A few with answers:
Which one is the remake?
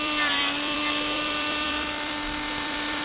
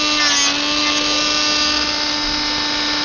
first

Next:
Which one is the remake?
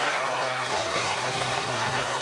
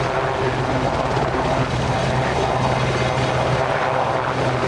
first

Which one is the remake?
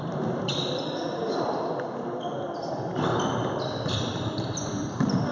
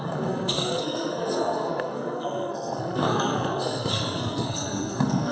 second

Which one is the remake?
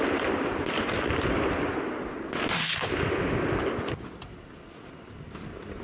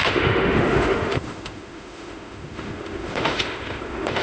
second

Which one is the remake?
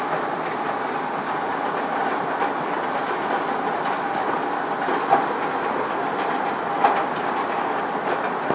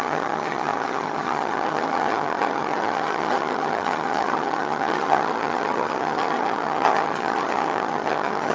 second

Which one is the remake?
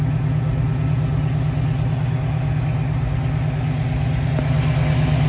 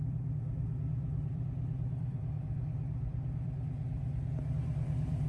second